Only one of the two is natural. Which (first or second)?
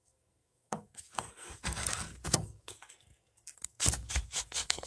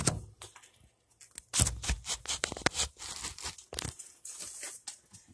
second